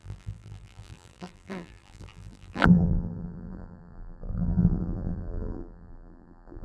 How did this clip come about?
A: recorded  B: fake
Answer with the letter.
B